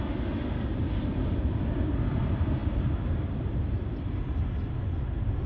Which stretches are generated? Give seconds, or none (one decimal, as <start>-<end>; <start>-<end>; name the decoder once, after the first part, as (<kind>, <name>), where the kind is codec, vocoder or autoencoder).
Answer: 1.1-2.2 (vocoder, BigVGAN v2); 2.6-4.1